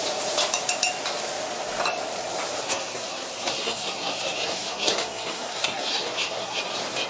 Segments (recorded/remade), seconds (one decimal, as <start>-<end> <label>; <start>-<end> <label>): 0.0-2.6 recorded; 2.6-6.6 remade; 6.6-7.1 recorded